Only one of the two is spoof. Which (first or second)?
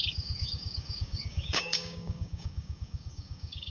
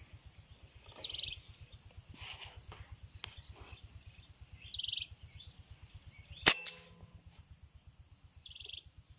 first